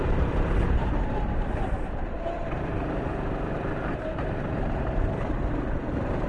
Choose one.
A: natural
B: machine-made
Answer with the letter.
B